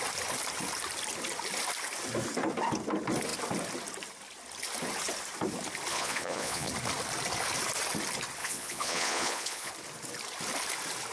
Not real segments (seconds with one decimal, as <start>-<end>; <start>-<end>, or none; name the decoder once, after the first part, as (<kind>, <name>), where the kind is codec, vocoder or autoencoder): 5.9-6.7 (vocoder, Vocos); 8.4-9.7